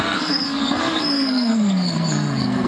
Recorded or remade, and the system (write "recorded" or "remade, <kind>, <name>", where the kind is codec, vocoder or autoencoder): remade, codec, SNAC